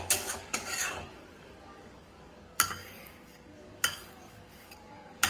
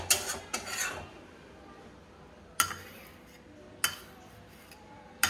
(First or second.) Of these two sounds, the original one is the second